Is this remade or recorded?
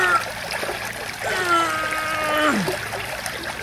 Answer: recorded